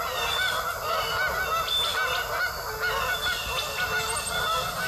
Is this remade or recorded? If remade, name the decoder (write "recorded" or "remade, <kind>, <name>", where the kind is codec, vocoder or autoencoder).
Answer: recorded